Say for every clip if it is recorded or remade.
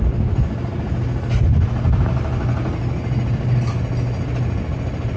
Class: recorded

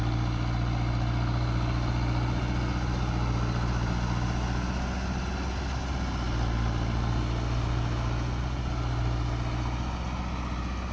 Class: recorded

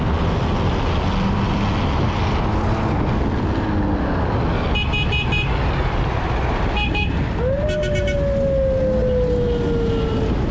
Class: recorded